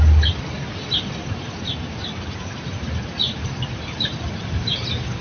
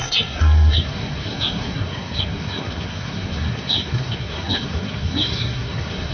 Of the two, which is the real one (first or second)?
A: first